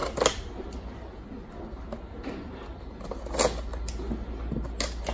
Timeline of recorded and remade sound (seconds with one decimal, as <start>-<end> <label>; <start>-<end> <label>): 0.0-5.1 recorded